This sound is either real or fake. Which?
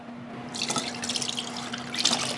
real